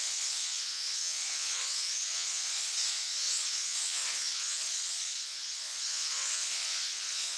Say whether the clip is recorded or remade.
remade